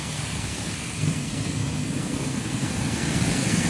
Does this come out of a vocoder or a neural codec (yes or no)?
yes